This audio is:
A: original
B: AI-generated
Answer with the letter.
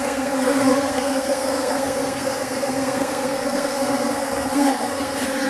B